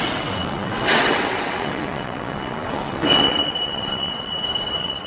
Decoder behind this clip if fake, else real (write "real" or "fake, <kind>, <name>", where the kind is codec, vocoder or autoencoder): fake, vocoder, WaveNeXt